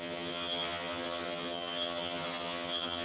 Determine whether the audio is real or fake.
fake